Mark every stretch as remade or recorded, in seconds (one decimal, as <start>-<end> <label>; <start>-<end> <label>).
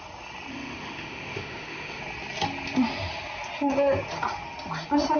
0.0-0.5 recorded; 0.5-2.0 remade; 2.0-5.2 recorded